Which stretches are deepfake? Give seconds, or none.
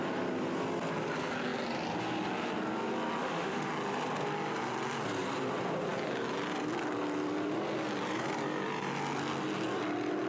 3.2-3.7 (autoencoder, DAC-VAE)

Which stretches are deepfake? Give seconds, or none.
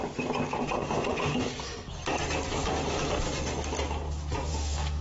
0.6-1.5 (autoencoder, DAC-VAE); 4.5-5.0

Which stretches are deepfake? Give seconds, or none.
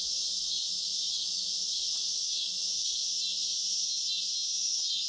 0.0-3.0 (autoencoder, DAC-VAE); 4.6-5.1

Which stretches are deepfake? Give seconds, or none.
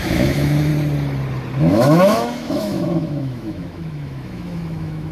0.0-0.7 (autoencoder, DAC-VAE); 1.6-5.1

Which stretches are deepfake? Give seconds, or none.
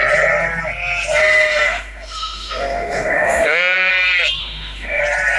1.2-3.9 (autoencoder, DAC-VAE); 4.4-5.0